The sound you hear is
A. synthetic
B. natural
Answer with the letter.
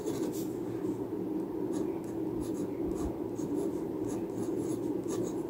B